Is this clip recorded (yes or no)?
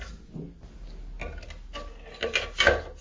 yes